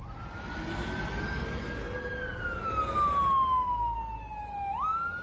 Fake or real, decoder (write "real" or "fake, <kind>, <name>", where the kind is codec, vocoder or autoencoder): real